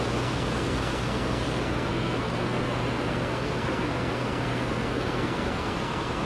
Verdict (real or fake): fake